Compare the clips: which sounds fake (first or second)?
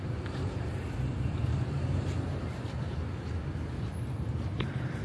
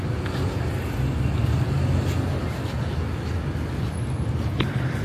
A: first